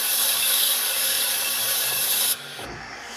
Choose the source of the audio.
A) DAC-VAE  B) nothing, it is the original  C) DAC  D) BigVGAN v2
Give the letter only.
C